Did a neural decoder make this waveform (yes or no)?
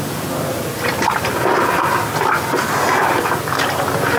no